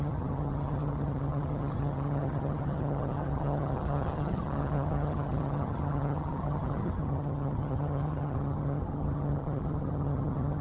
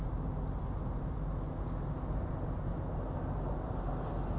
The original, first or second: second